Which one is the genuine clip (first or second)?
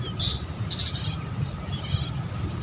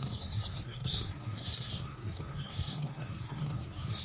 first